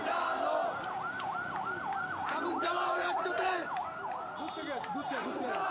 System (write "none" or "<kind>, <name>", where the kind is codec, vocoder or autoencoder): none